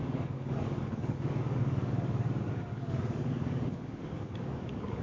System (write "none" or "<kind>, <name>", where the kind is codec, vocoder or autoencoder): codec, DAC